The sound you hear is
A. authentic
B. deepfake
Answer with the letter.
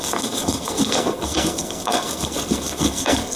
B